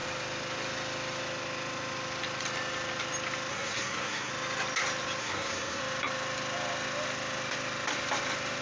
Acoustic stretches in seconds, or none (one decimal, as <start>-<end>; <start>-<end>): 0.0-3.5; 4.3-5.2; 5.8-8.6